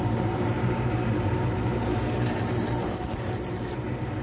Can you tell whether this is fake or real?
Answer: fake